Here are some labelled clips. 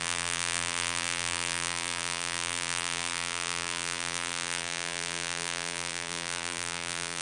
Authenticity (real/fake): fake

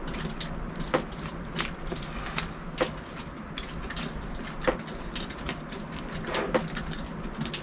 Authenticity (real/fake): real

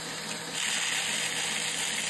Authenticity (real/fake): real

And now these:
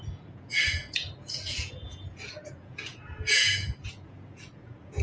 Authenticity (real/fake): fake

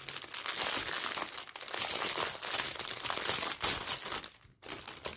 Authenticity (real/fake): real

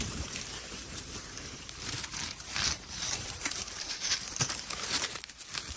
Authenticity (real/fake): fake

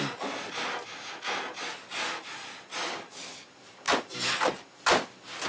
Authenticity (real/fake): real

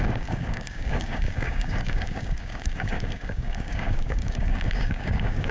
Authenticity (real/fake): fake